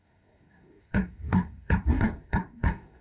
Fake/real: fake